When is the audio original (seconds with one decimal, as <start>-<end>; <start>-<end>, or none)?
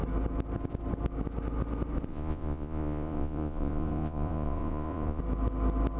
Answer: 0.0-2.1; 5.2-6.0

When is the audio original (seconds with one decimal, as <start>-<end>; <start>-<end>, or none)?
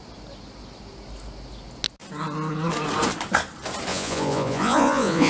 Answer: 0.0-3.9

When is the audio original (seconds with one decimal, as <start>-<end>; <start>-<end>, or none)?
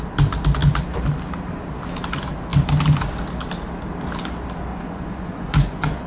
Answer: 0.0-4.7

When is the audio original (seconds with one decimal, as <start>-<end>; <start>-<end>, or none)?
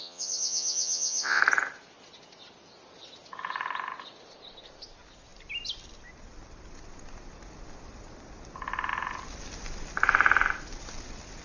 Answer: 1.4-11.4